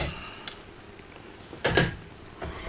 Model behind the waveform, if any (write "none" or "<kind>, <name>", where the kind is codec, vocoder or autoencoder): none